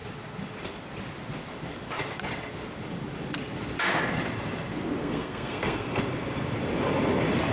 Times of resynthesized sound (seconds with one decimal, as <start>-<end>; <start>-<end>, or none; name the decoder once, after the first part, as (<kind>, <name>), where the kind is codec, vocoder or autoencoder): 5.0-6.0 (codec, SNAC)